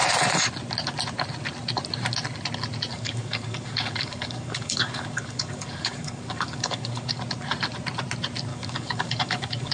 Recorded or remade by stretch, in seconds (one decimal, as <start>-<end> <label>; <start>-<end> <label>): 0.0-2.9 recorded; 2.9-7.2 remade; 7.2-8.5 recorded; 8.5-9.7 remade